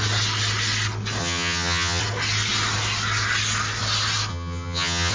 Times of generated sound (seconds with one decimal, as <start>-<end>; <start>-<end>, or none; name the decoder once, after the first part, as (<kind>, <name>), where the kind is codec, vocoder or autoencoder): 1.2-2.0 (vocoder, HiFi-GAN); 4.3-5.1